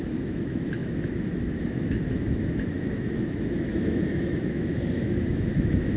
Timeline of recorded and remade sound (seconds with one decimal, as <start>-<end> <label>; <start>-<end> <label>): 0.0-6.0 remade